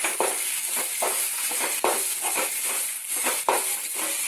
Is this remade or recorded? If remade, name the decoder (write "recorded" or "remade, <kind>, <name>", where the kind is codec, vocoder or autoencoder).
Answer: recorded